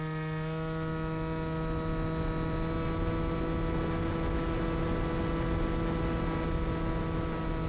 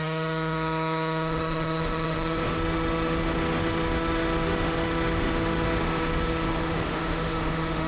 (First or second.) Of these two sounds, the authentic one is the first